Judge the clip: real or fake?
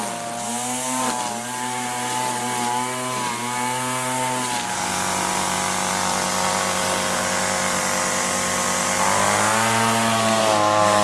real